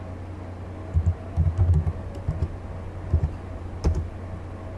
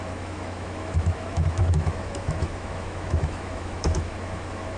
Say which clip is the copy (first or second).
second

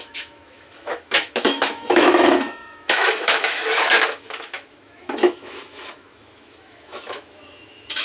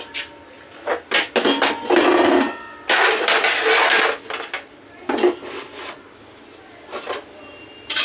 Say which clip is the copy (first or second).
first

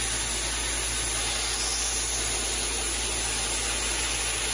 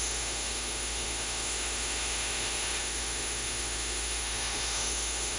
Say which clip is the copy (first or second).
second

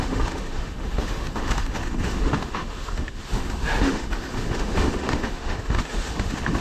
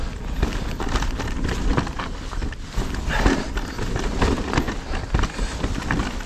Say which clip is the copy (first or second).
first